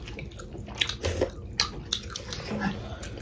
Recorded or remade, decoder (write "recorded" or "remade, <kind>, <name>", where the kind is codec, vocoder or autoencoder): recorded